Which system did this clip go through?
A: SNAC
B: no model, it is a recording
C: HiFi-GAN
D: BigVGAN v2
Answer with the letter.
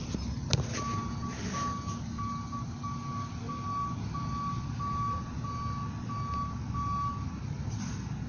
B